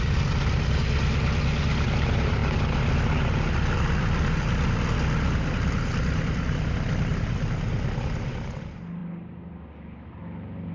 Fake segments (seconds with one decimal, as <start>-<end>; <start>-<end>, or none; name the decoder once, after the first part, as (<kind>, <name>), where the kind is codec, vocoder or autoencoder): none